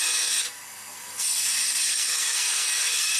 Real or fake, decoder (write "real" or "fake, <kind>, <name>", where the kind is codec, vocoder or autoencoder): fake, codec, SNAC